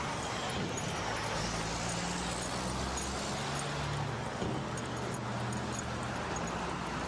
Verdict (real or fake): real